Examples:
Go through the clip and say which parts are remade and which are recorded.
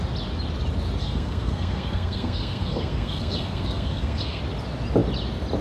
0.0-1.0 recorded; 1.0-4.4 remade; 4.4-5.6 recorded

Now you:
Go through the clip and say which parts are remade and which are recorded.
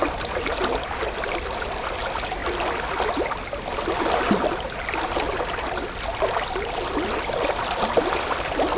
0.0-8.8 recorded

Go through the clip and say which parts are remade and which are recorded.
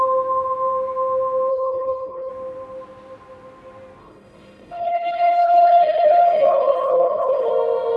0.0-1.5 recorded; 1.5-2.3 remade; 2.3-4.0 recorded; 4.0-7.5 remade; 7.5-8.0 recorded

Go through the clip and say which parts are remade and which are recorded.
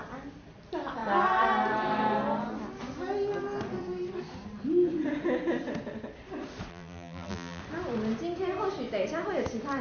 0.0-6.7 recorded; 6.7-7.6 remade; 7.6-9.8 recorded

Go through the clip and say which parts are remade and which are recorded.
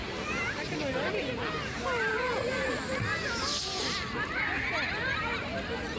0.0-6.0 recorded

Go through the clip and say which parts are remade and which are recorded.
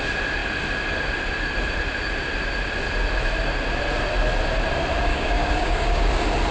0.0-5.1 recorded; 5.1-6.1 remade; 6.1-6.5 recorded